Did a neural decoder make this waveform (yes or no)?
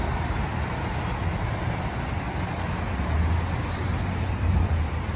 no